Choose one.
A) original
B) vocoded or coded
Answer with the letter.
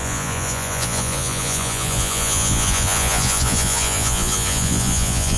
B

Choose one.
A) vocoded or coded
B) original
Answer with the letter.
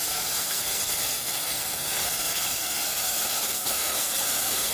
A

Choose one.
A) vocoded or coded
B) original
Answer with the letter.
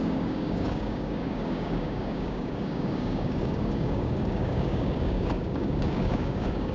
A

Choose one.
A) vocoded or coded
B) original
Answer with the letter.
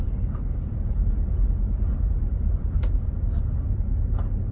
A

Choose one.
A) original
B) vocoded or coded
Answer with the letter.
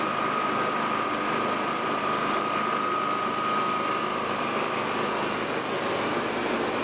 A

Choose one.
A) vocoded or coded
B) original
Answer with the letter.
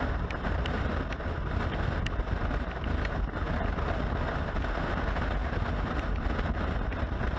B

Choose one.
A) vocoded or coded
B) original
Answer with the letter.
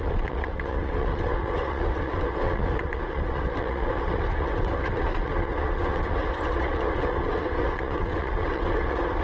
A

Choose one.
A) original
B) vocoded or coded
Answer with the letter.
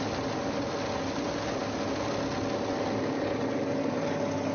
A